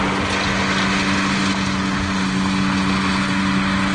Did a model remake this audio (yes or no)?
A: no